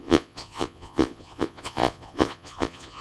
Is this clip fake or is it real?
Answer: fake